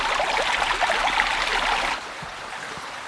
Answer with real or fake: real